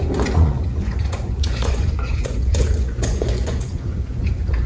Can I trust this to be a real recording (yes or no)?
no